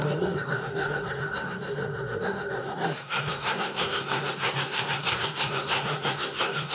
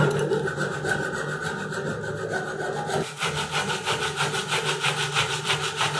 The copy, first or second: first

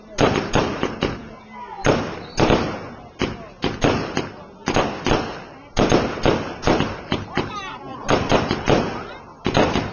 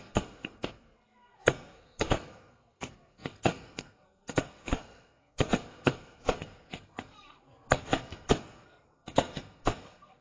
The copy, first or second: second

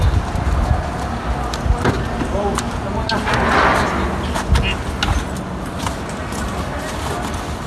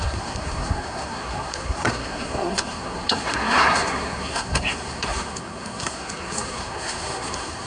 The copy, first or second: second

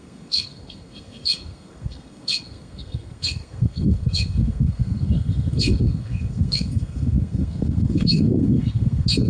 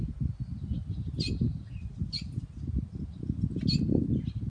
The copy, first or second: first